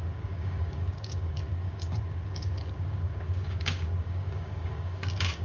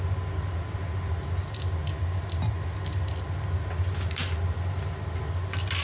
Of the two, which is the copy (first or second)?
first